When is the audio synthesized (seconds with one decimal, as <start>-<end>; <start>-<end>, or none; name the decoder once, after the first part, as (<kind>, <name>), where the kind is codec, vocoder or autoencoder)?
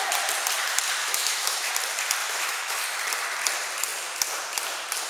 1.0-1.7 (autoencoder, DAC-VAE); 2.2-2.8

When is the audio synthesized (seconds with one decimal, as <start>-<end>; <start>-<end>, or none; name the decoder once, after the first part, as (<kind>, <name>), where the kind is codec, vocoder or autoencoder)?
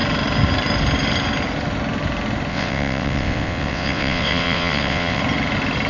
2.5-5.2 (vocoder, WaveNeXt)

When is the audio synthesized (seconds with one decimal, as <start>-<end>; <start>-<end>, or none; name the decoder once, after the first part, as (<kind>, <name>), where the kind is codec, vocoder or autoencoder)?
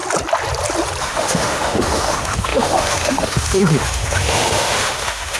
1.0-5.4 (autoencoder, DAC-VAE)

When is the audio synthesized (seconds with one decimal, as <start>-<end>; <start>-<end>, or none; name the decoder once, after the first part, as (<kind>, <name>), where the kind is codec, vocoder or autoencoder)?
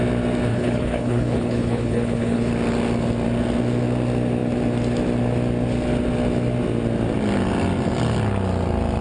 0.5-2.5 (codec, HILCodec)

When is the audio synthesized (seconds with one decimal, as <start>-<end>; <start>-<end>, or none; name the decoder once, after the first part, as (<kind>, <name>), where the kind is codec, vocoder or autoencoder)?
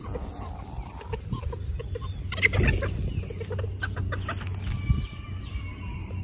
none